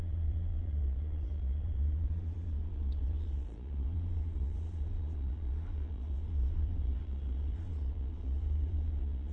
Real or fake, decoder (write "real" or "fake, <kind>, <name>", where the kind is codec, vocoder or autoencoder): fake, vocoder, Vocos